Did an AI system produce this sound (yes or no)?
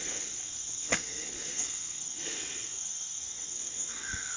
yes